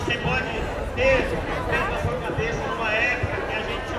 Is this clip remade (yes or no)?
no